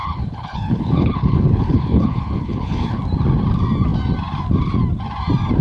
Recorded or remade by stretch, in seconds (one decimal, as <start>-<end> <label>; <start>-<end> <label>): 0.0-3.0 remade; 3.0-5.6 recorded